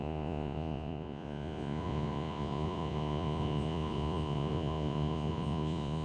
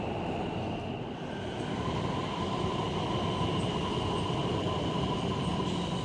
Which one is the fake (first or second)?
first